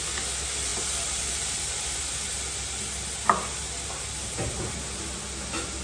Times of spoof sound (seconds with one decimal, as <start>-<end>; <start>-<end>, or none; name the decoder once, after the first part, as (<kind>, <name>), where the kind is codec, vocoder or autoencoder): none